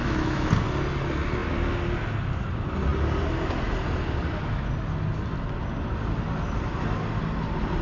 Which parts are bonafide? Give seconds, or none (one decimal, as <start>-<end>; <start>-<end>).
0.5-7.8